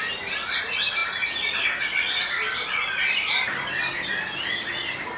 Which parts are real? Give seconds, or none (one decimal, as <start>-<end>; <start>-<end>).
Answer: 0.0-5.2